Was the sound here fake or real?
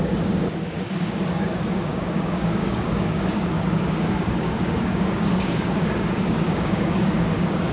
fake